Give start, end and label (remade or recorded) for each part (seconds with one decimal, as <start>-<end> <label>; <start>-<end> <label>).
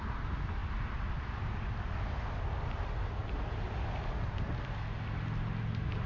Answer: 0.0-6.1 recorded